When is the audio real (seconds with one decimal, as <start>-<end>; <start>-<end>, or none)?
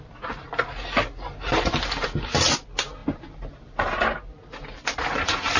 0.0-5.6